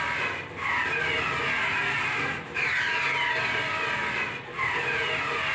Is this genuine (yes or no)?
yes